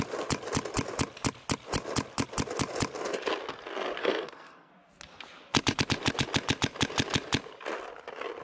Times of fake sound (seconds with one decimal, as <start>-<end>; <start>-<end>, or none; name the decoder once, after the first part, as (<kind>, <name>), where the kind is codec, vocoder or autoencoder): 4.0-4.7 (codec, SNAC)